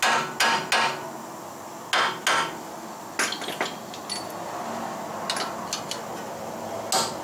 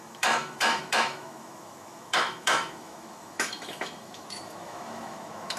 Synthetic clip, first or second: second